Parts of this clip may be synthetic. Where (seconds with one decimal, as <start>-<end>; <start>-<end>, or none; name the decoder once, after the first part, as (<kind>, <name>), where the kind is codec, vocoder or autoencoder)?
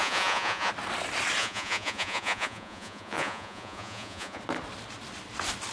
0.0-0.7 (vocoder, Vocos); 1.4-4.4